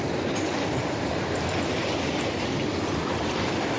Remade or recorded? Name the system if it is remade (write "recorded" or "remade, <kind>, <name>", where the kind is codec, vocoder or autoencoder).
recorded